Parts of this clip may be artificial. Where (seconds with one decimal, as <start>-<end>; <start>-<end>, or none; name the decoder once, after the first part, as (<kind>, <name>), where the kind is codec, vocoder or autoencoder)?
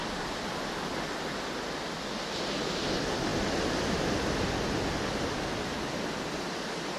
0.0-1.1 (vocoder, BigVGAN v2); 3.3-4.8